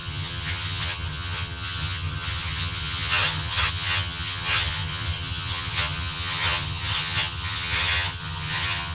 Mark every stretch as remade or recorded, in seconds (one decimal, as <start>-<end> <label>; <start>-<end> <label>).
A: 0.0-8.9 remade

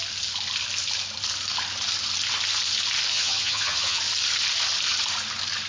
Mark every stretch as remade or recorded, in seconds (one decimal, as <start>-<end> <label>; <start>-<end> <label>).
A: 0.0-3.1 recorded; 3.1-4.0 remade; 4.0-5.7 recorded

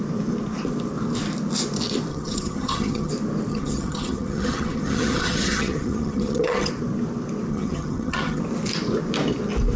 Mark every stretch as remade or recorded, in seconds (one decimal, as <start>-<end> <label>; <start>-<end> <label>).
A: 0.0-2.1 recorded; 2.1-3.1 remade; 3.1-3.5 recorded; 3.5-6.7 remade; 6.7-7.5 recorded; 7.5-8.4 remade; 8.4-9.8 recorded

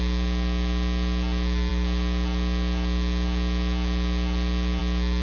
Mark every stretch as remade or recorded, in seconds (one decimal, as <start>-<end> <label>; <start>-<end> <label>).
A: 0.0-5.2 recorded